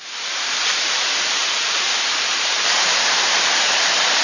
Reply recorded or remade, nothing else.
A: remade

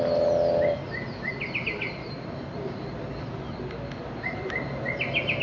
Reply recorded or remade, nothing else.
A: recorded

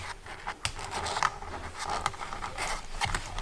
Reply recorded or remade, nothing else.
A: recorded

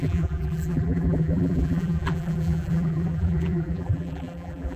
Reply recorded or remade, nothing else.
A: remade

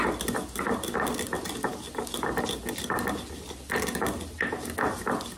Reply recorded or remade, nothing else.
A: recorded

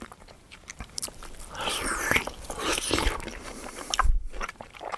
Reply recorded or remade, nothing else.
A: remade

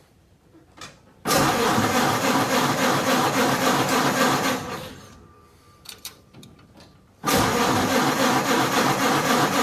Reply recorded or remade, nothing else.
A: remade